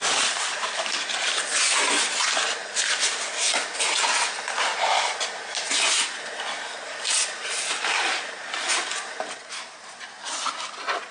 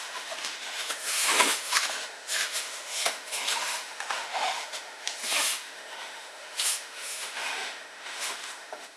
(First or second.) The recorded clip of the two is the first